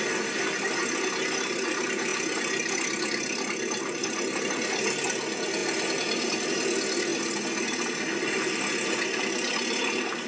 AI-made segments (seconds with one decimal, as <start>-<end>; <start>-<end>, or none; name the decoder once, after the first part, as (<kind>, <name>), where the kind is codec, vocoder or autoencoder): none